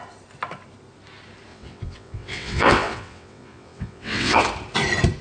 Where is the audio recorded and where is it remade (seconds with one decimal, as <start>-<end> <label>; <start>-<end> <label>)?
0.0-1.5 recorded; 1.5-4.4 remade; 4.4-5.2 recorded